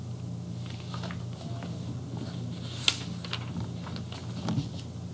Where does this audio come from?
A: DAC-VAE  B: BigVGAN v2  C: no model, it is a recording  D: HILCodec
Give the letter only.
C